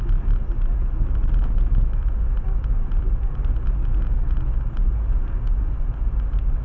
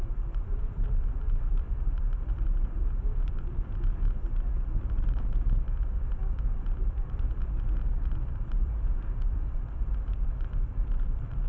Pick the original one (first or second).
first